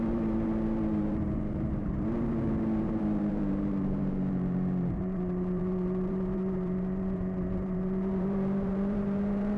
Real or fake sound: fake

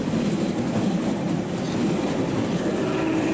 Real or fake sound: real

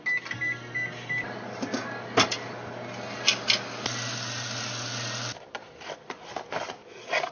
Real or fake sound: real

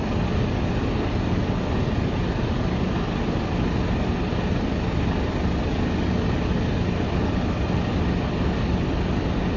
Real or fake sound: real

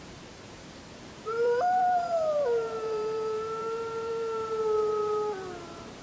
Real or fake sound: fake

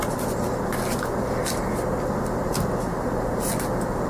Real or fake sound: real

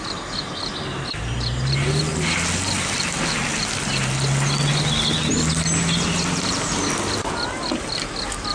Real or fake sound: real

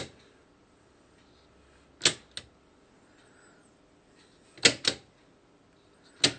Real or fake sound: real